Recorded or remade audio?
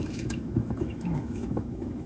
remade